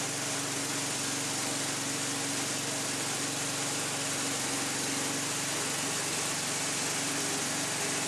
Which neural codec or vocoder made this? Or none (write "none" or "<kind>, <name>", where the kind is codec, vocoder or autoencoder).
none